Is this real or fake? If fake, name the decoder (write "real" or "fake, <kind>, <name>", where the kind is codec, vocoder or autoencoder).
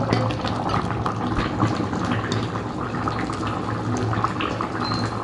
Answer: real